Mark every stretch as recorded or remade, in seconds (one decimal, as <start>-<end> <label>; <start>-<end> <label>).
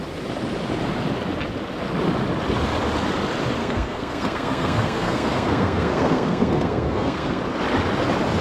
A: 0.0-3.6 recorded; 3.6-7.4 remade; 7.4-8.4 recorded